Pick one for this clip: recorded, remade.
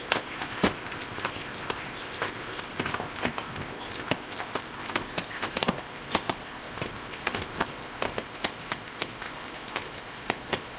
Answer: remade